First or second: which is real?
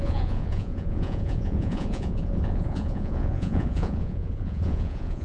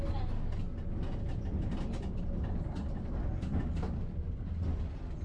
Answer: second